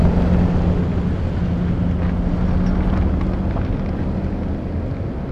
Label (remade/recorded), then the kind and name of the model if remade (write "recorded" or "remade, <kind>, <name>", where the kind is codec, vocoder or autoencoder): recorded